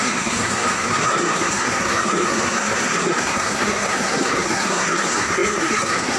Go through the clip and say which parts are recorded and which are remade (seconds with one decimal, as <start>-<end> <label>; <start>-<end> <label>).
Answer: 0.0-6.2 remade